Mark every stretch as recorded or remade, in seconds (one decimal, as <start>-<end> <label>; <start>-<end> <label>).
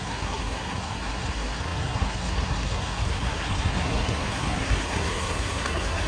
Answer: 0.0-6.1 remade